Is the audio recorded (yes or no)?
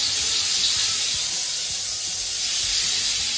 yes